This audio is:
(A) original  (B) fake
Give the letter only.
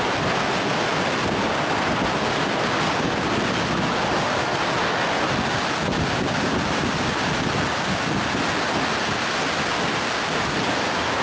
A